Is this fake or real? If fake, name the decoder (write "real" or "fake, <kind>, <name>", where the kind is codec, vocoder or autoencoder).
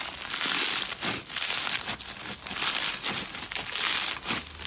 real